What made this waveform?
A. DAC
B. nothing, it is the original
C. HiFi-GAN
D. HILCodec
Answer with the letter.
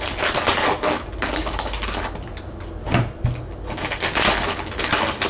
B